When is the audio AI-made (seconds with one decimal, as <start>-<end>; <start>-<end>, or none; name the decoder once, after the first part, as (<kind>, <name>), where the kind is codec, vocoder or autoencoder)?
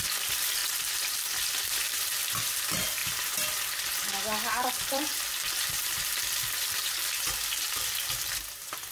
0.0-0.6 (vocoder, BigVGAN v2); 1.6-3.0; 4.5-8.9